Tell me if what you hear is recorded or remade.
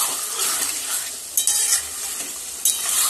recorded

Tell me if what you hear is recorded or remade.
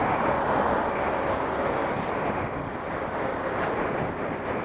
recorded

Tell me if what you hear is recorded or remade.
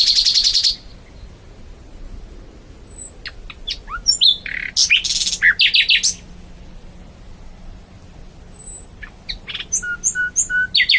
recorded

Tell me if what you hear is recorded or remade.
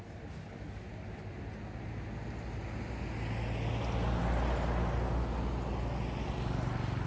recorded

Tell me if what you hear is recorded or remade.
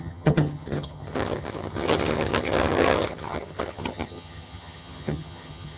remade